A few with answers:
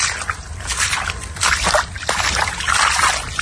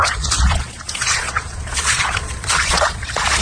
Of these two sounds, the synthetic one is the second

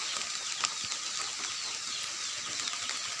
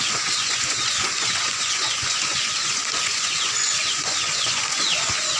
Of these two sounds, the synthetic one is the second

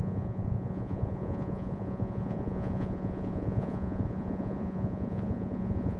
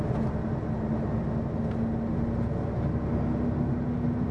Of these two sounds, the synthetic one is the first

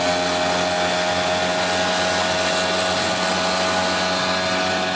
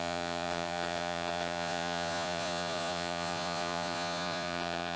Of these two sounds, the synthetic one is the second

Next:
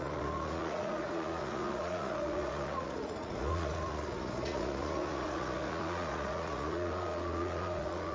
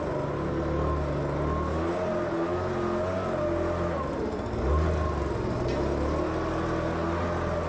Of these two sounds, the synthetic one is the first